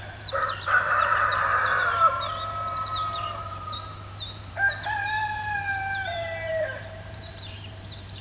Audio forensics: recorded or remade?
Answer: remade